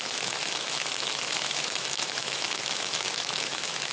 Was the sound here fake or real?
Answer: fake